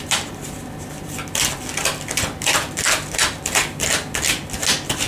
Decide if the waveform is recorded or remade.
recorded